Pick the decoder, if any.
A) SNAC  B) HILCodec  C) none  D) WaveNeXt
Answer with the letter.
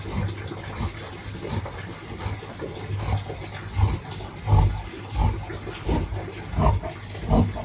C